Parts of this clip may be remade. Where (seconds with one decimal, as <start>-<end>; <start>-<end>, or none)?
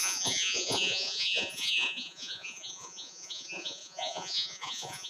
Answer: 0.0-5.1